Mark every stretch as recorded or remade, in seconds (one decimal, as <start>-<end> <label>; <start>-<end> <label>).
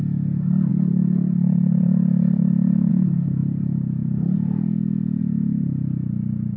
0.0-0.7 recorded; 0.7-2.9 remade; 2.9-3.4 recorded; 3.4-5.2 remade; 5.2-6.6 recorded